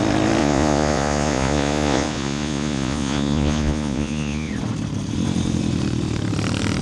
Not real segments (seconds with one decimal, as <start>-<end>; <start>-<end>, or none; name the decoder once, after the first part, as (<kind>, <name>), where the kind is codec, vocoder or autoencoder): 0.4-4.5 (vocoder, Vocos)

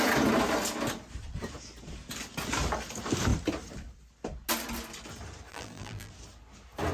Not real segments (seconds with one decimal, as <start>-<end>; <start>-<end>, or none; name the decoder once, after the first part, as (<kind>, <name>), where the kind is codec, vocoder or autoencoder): 5.5-6.1 (vocoder, BigVGAN v2)

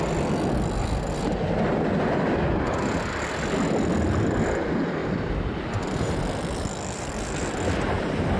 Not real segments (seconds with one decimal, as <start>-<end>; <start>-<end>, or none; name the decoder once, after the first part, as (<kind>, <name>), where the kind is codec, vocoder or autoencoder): 5.0-6.2 (vocoder, BigVGAN v2)

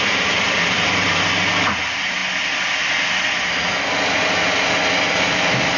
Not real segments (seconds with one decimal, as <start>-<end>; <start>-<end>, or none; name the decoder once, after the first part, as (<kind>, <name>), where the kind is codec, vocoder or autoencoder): 0.0-2.2 (vocoder, BigVGAN v2); 5.1-5.8